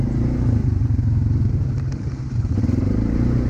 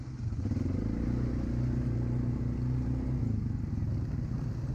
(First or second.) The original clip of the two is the second